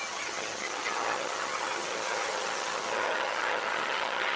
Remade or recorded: remade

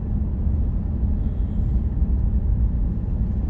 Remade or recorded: recorded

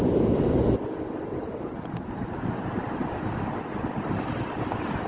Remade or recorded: recorded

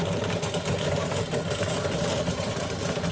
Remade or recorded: recorded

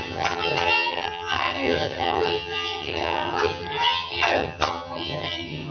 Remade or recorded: remade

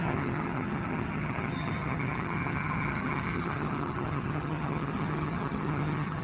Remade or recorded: remade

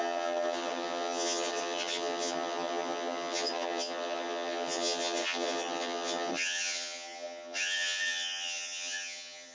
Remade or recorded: remade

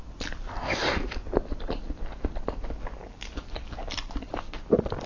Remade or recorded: recorded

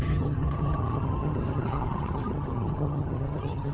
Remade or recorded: remade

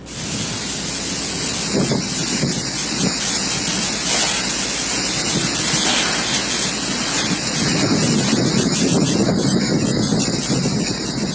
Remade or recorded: recorded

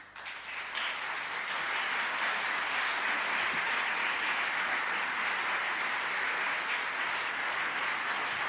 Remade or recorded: recorded